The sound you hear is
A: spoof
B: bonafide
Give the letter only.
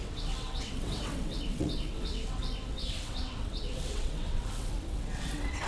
A